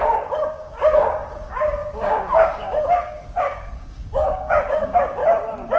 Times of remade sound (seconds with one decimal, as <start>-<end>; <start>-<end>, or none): 0.0-5.2